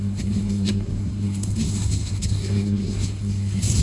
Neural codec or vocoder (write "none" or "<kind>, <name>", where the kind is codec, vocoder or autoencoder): codec, SNAC